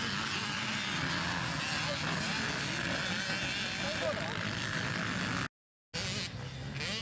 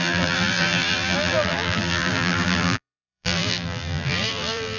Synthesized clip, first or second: second